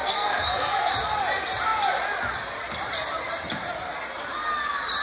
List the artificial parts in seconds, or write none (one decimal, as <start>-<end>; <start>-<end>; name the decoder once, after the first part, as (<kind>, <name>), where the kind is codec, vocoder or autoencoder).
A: 0.0-0.9 (codec, SNAC)